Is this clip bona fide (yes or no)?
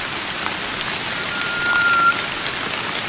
yes